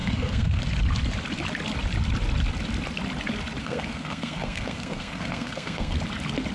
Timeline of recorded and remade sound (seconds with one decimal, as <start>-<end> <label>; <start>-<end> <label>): 0.0-0.6 remade; 0.6-3.6 recorded; 3.6-6.0 remade; 6.0-6.5 recorded